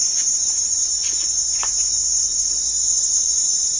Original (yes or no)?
no